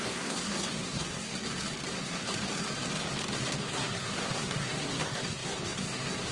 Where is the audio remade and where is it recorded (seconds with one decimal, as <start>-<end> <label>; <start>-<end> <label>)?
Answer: 0.0-1.3 remade; 1.3-1.9 recorded; 1.9-2.3 remade; 2.3-3.6 recorded; 3.6-6.3 remade